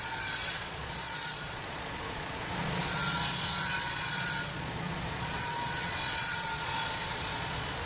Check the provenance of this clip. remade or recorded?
remade